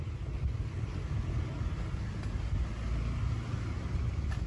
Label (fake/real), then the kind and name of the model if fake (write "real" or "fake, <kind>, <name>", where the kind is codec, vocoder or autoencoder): real